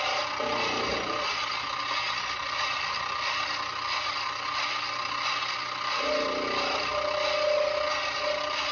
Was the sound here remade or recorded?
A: recorded